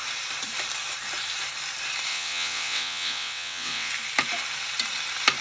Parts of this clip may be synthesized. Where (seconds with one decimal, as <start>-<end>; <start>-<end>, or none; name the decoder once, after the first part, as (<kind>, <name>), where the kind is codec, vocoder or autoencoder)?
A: 2.1-3.9 (vocoder, WaveNeXt)